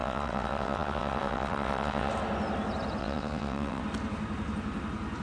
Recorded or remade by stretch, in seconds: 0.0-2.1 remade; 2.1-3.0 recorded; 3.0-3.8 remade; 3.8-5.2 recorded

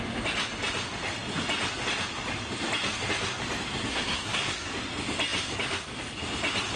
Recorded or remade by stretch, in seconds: 0.0-3.9 recorded; 3.9-4.7 remade; 4.7-6.8 recorded

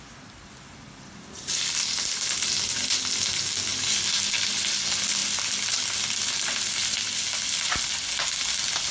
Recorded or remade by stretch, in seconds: 0.0-8.9 recorded

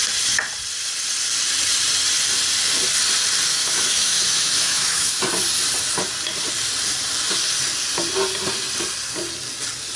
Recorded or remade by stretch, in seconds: 0.0-3.5 recorded; 3.5-5.2 remade; 5.2-10.0 recorded

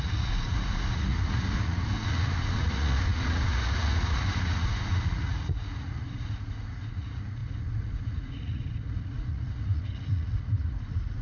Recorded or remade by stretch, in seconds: 0.0-11.2 remade

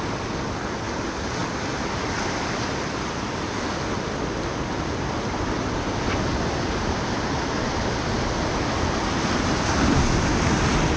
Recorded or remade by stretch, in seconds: 0.0-11.0 recorded